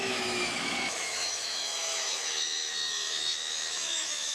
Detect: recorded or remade remade